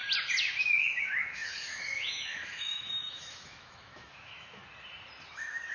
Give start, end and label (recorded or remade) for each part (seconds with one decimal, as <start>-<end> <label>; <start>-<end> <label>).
0.0-0.6 recorded; 0.6-4.6 remade; 4.6-5.3 recorded; 5.3-5.7 remade